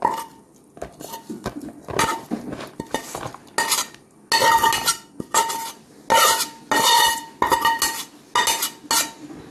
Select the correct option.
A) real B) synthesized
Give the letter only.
A